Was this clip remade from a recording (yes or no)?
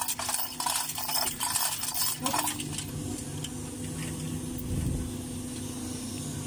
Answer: no